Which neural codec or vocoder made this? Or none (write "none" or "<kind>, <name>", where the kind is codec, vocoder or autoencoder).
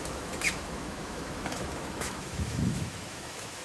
autoencoder, DAC-VAE